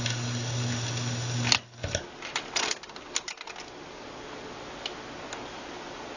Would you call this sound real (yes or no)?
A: yes